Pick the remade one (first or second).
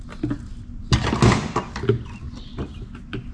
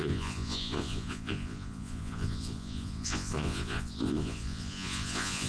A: second